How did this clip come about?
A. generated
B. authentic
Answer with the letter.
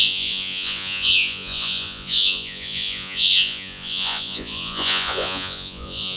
A